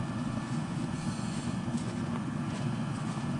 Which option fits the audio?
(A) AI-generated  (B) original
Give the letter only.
A